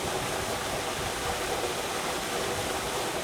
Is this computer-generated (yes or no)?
no